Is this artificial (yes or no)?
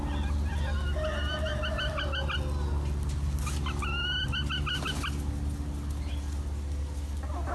no